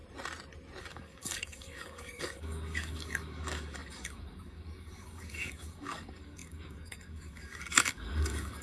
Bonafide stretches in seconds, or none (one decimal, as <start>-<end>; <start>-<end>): 0.0-0.8